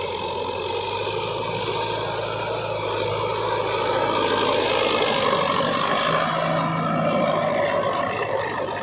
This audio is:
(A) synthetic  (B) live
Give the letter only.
B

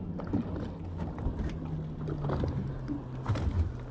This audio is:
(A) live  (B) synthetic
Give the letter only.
A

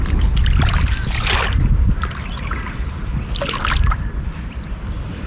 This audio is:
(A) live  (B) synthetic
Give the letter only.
A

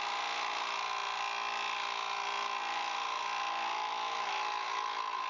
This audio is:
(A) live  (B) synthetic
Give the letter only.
A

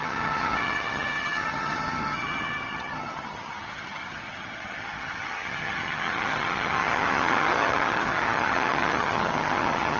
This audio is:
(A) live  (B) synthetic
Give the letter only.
B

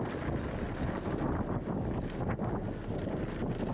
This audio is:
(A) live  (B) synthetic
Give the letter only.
A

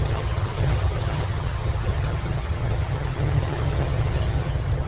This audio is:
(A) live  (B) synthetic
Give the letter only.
B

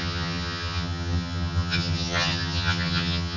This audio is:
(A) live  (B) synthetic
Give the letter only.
B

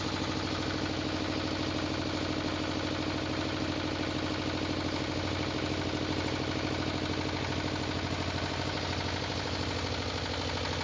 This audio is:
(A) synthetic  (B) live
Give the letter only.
B